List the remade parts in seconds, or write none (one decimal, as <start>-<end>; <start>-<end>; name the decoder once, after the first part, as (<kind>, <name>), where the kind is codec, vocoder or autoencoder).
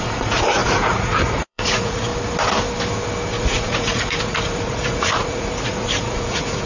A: 0.0-2.1 (vocoder, Vocos); 3.3-6.7